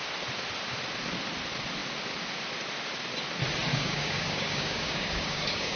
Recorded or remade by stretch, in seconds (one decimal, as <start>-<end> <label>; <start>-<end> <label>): 0.0-3.7 recorded; 3.7-5.8 remade